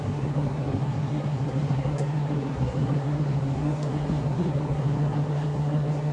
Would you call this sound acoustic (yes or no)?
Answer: no